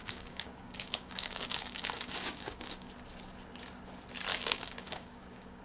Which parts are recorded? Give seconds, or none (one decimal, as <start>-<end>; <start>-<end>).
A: 2.9-4.3